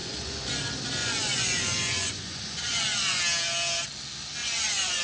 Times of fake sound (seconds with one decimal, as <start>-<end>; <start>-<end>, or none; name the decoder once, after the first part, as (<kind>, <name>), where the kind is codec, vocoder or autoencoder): 0.0-0.5 (vocoder, Vocos); 1.0-3.2; 4.4-5.0

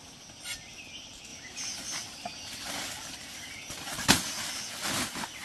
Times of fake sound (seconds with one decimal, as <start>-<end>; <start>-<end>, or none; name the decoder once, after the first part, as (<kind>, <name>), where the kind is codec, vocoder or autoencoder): none

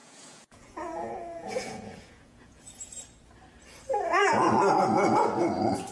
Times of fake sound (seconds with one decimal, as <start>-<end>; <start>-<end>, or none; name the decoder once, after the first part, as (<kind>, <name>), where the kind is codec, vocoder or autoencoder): 0.0-2.6 (vocoder, Vocos)